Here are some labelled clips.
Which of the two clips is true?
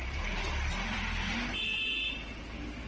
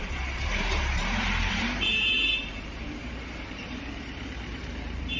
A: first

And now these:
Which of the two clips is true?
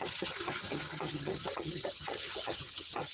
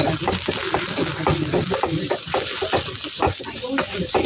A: second